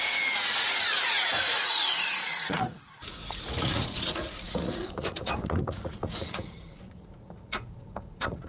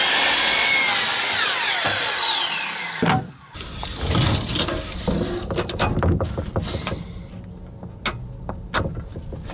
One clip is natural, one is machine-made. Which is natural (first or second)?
second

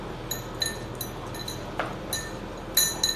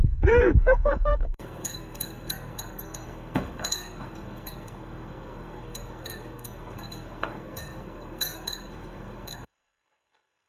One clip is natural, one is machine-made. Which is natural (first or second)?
first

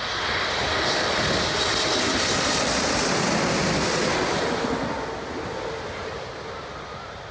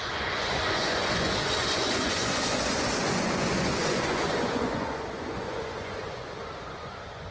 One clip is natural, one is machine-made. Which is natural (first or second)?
first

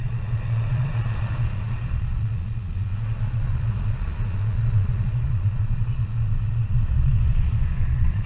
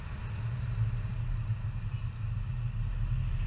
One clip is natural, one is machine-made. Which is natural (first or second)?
second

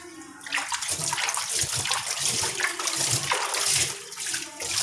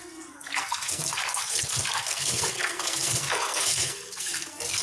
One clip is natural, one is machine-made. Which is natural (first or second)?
first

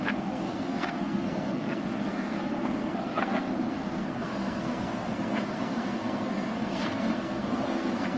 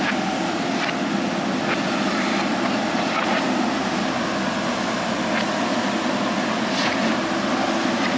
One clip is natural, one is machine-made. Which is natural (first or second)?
second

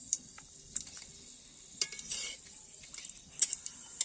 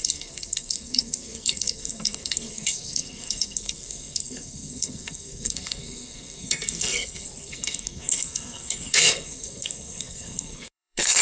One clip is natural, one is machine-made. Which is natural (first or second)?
first